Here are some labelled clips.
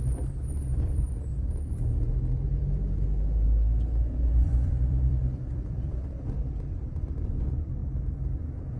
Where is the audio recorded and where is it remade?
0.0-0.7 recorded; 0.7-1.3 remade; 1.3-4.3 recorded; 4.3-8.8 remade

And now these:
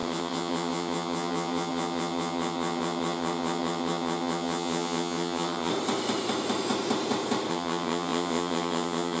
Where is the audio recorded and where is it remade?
0.0-5.7 remade; 5.7-7.5 recorded; 7.5-9.2 remade

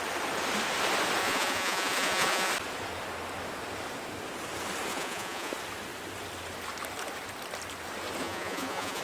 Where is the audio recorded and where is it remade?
0.0-1.2 recorded; 1.2-2.5 remade; 2.5-4.9 recorded; 4.9-5.5 remade; 5.5-8.2 recorded; 8.2-9.0 remade

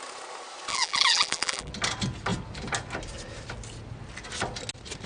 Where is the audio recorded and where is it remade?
0.0-0.7 recorded; 0.7-1.7 remade; 1.7-5.1 recorded

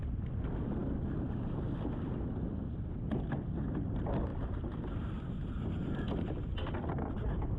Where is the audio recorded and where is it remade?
0.0-7.6 recorded

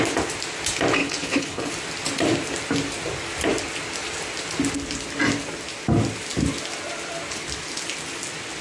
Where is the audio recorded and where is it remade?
0.0-1.0 recorded; 1.0-1.7 remade; 1.7-8.6 recorded

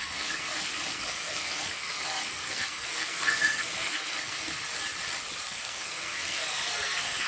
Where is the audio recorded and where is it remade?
0.0-4.7 remade; 4.7-5.4 recorded; 5.4-7.3 remade

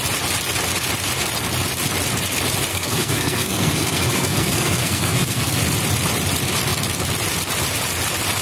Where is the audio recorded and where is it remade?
0.0-2.7 recorded; 2.7-5.6 remade; 5.6-8.4 recorded